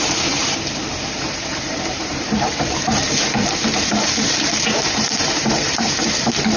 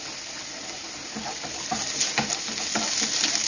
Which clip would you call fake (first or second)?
first